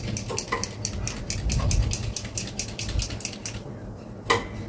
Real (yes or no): yes